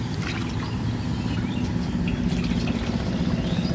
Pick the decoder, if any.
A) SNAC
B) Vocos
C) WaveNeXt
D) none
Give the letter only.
D